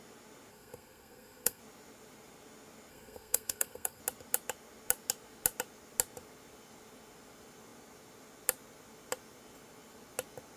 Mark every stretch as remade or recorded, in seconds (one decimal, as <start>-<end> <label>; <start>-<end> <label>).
0.0-0.5 recorded; 0.5-1.6 remade; 1.6-2.9 recorded; 2.9-4.0 remade; 4.0-10.6 recorded